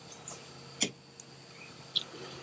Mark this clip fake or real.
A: real